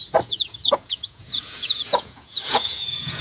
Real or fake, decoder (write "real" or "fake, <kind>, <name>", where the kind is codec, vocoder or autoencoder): fake, vocoder, Vocos